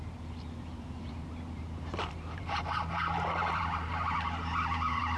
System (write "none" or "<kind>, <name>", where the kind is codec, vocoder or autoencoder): vocoder, BigVGAN v2